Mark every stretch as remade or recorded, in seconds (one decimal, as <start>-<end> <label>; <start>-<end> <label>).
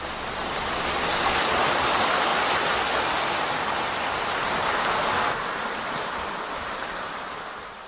0.0-7.9 recorded